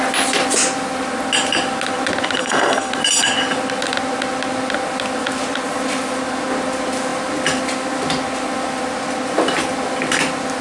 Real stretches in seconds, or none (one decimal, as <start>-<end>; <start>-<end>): 0.0-2.4; 2.9-10.6